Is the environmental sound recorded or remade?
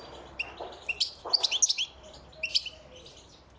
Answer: recorded